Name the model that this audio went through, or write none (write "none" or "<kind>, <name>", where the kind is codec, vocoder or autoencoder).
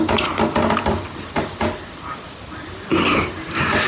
none